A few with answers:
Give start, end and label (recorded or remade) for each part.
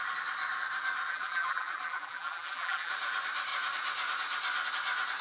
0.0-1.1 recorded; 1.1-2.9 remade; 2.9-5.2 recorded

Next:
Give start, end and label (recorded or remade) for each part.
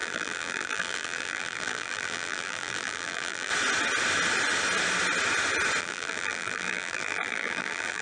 0.0-3.5 remade; 3.5-5.8 recorded; 5.8-8.0 remade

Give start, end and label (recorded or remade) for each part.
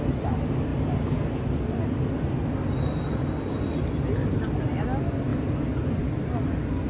0.0-6.9 recorded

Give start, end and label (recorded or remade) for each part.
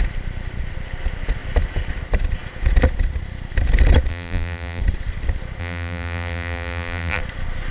0.0-4.1 recorded; 4.1-4.8 remade; 4.8-5.6 recorded; 5.6-7.2 remade; 7.2-7.7 recorded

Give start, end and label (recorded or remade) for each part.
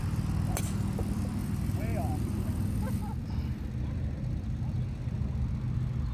0.0-1.4 recorded; 1.4-3.0 remade; 3.0-6.1 recorded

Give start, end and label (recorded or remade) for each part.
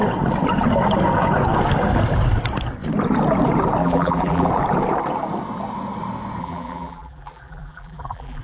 0.0-3.8 recorded; 3.8-4.5 remade; 4.5-6.4 recorded; 6.4-8.4 remade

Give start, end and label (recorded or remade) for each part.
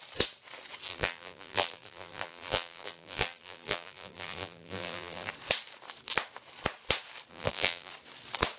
0.0-0.9 recorded; 0.9-5.3 remade; 5.3-7.3 recorded; 7.3-7.9 remade; 7.9-8.6 recorded